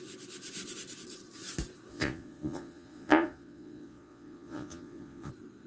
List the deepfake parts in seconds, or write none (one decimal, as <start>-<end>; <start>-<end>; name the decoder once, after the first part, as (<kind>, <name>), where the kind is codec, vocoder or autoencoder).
1.9-5.3 (vocoder, Vocos)